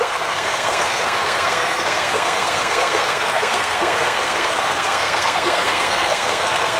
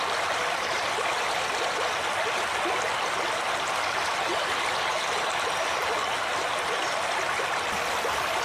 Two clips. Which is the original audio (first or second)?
second